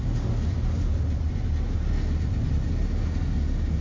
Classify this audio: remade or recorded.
recorded